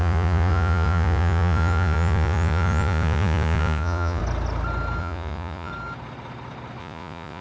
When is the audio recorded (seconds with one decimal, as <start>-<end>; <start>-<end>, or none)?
4.2-5.0; 5.7-6.8